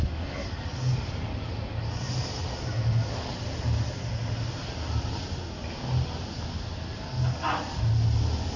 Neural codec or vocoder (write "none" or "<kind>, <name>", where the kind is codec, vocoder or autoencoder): none